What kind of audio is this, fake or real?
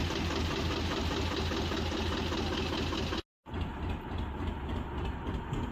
real